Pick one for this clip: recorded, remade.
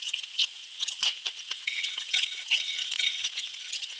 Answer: remade